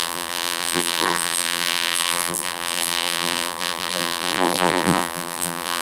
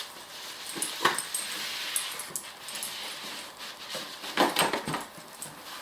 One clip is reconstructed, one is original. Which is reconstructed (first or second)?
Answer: first